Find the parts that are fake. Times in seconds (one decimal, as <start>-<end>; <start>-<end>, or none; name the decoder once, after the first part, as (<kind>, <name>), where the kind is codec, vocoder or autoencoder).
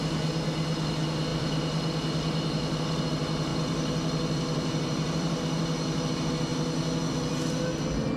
3.5-5.4 (vocoder, BigVGAN v2)